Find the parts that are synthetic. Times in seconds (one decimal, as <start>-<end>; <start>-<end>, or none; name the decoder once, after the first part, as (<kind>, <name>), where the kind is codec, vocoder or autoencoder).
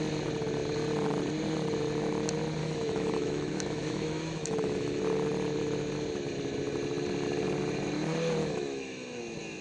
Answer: 2.6-5.0 (autoencoder, DAC-VAE); 8.4-9.2